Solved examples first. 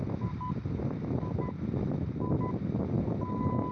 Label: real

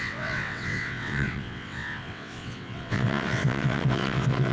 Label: fake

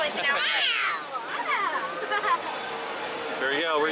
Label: real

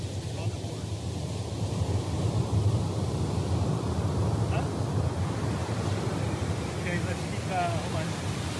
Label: real